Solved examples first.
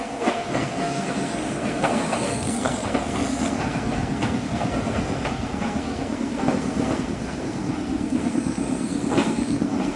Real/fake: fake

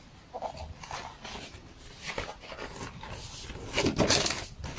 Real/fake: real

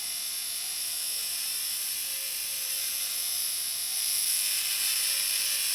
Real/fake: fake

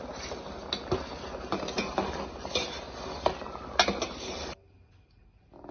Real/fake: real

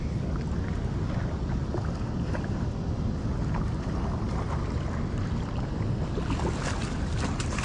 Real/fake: real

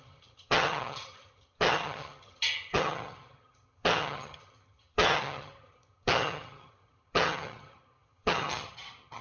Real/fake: fake